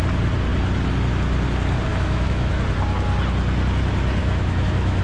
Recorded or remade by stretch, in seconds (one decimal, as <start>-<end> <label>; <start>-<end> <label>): 0.0-1.9 recorded; 1.9-2.5 remade; 2.5-4.2 recorded; 4.2-5.0 remade